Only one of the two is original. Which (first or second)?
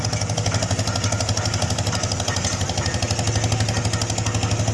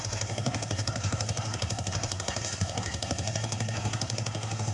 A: first